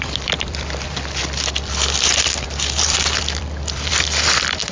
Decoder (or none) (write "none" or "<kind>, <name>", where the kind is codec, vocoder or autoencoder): vocoder, BigVGAN v2